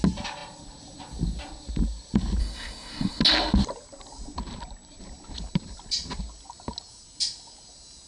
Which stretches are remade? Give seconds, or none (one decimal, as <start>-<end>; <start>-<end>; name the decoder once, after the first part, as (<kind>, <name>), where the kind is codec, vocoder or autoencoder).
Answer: 2.4-3.2 (codec, SNAC)